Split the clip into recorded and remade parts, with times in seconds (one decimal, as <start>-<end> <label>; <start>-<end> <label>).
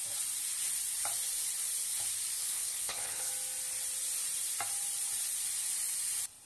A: 0.0-2.4 recorded; 2.4-3.3 remade; 3.3-6.5 recorded